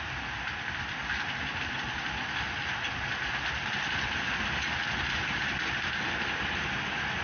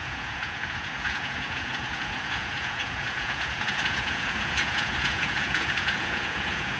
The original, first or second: first